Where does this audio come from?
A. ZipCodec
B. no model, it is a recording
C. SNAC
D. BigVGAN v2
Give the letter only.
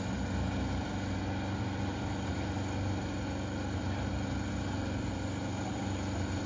B